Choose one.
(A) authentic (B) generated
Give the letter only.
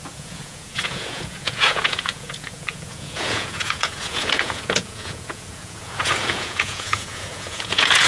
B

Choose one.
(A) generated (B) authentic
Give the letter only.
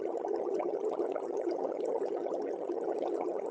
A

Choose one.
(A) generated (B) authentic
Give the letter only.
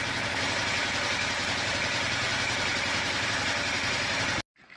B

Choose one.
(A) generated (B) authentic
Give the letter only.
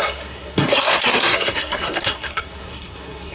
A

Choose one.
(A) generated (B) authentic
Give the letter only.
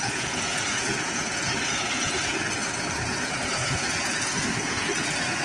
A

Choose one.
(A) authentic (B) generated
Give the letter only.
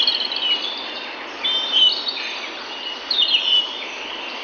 A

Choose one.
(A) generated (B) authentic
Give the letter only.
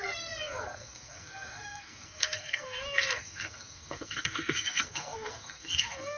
A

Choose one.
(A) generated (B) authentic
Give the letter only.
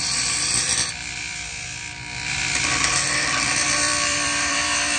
A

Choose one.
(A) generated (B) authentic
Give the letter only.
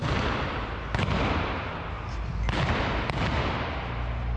B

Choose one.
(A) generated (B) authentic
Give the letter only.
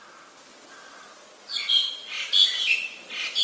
B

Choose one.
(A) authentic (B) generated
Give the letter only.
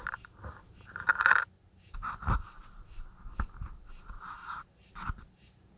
A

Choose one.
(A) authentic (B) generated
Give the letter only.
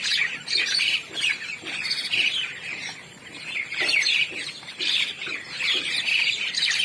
B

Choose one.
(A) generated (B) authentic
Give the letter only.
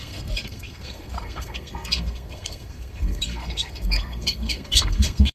A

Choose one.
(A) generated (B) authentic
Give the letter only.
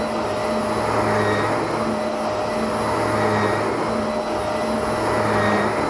B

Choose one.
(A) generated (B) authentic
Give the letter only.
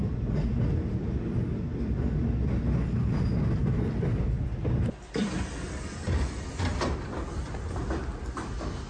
B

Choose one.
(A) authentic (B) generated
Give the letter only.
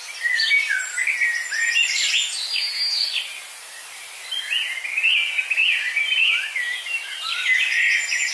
A